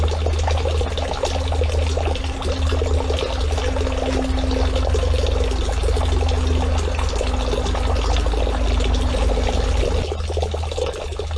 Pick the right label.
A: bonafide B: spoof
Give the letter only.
A